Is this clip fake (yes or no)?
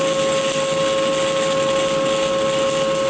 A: no